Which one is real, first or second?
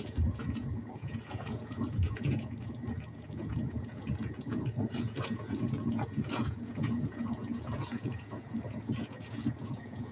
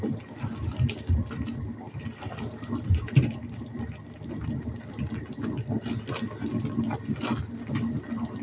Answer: second